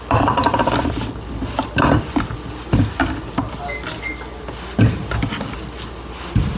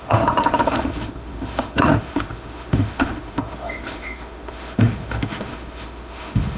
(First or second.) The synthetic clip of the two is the second